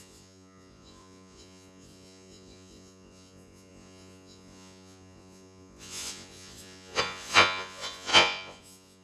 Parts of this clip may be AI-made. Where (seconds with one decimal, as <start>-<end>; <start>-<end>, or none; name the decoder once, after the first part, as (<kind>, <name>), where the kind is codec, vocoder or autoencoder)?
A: 0.0-9.0 (vocoder, Vocos)